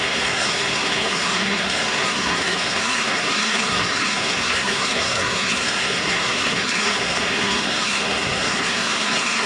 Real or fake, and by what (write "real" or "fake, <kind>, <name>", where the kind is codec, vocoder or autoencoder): fake, codec, SNAC